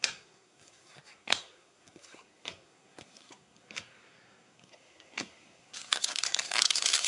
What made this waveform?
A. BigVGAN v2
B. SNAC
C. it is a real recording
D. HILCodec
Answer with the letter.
B